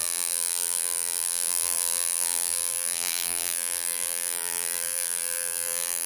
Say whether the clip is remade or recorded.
remade